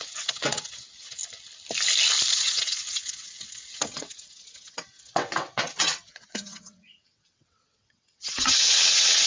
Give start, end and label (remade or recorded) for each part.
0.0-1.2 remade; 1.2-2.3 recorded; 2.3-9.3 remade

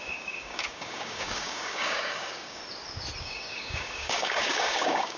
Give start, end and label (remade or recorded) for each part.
0.0-2.6 remade; 2.6-3.2 recorded; 3.2-5.2 remade